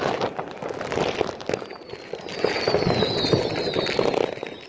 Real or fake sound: real